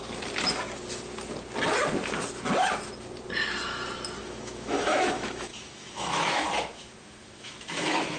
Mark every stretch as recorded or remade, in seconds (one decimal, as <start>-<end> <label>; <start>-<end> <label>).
0.0-4.2 recorded; 4.2-8.2 remade